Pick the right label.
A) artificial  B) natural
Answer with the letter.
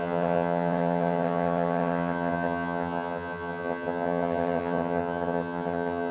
A